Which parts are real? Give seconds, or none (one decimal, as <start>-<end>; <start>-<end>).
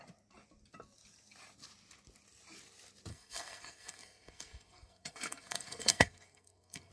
0.0-3.1